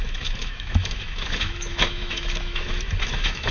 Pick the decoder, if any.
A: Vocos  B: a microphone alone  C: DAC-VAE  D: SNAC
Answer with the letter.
C